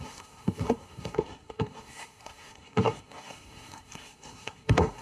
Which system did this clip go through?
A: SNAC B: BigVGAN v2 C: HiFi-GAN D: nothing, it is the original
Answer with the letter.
A